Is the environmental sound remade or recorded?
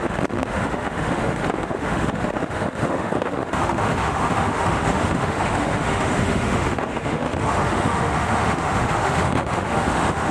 remade